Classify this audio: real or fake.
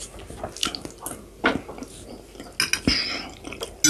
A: real